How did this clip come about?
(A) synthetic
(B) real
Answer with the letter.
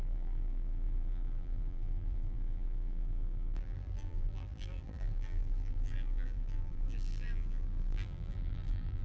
A